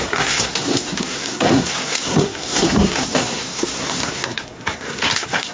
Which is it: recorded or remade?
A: remade